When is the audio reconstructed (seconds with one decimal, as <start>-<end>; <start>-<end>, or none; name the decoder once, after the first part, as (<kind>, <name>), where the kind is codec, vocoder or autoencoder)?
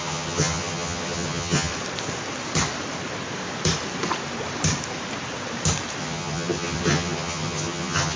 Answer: 0.0-1.7 (vocoder, HiFi-GAN); 6.0-8.2